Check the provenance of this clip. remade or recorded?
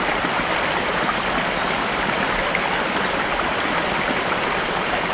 recorded